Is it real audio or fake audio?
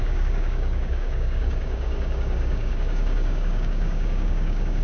fake